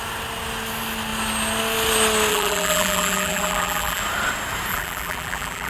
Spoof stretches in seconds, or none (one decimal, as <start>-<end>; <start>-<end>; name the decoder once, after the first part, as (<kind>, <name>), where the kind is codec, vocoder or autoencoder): 2.3-4.0 (vocoder, BigVGAN v2); 4.7-5.7